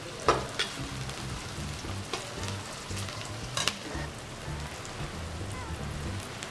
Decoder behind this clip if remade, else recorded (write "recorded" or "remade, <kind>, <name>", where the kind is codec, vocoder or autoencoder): recorded